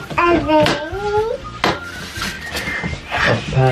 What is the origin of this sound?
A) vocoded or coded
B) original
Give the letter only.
B